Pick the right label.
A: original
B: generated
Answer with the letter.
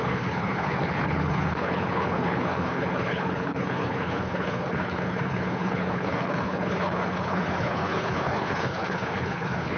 B